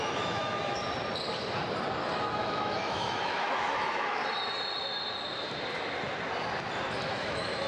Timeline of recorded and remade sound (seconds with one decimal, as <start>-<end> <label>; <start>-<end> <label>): 0.0-0.8 remade; 0.8-2.4 recorded; 2.4-4.2 remade; 4.2-7.1 recorded; 7.1-7.7 remade